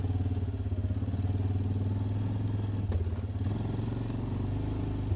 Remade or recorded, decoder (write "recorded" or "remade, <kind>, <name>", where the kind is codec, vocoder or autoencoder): recorded